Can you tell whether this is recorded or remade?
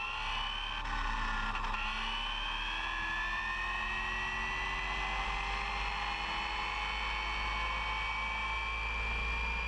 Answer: recorded